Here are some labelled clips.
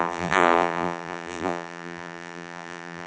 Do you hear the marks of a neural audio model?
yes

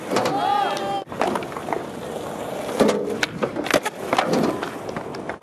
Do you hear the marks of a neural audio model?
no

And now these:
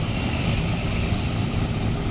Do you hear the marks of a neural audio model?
yes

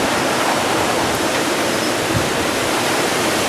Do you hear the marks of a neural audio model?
yes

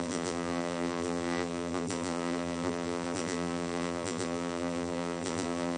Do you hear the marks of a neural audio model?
yes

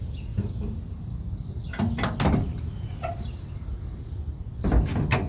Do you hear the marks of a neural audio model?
no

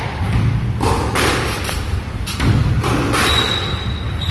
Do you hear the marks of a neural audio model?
yes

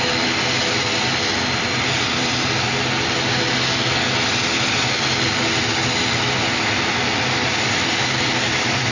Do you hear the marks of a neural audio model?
no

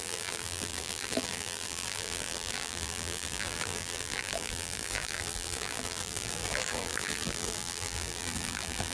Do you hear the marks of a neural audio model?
yes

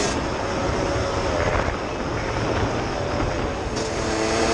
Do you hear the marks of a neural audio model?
no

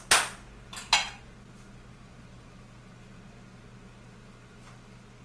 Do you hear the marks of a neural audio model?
no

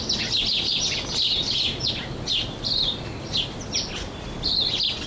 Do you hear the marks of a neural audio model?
no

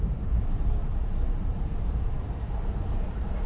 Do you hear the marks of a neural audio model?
yes